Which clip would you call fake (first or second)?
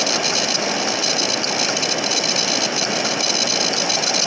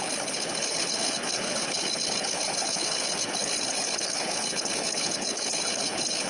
second